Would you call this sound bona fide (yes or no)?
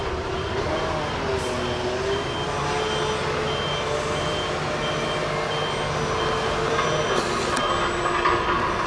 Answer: yes